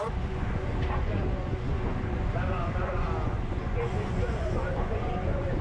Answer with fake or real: fake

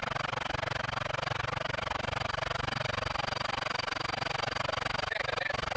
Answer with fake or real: real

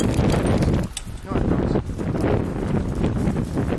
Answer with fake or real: real